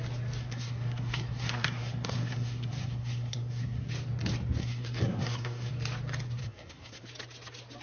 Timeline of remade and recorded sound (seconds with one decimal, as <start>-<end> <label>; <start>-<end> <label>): 0.0-0.4 recorded; 0.4-3.9 remade; 3.9-4.6 recorded; 4.6-5.7 remade; 5.7-6.4 recorded; 6.4-7.0 remade; 7.0-7.8 recorded